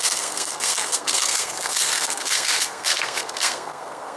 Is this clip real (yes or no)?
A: no